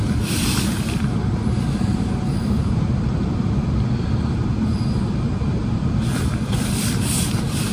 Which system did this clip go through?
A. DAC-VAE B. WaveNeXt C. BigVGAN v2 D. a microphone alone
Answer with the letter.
C